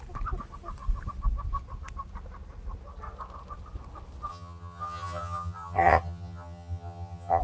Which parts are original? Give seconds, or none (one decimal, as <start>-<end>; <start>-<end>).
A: 0.0-4.3